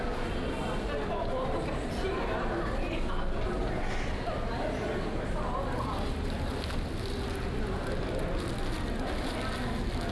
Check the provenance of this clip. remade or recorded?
recorded